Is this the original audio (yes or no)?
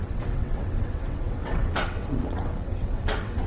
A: no